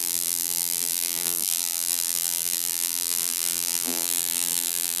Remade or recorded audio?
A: remade